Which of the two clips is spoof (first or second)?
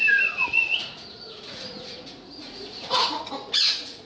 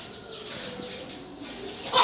first